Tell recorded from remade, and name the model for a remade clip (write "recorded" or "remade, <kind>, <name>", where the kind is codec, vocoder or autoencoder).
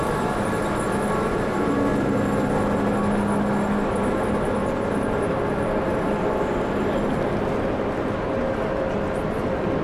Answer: recorded